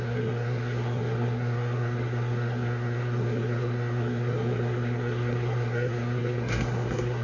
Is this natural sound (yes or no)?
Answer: no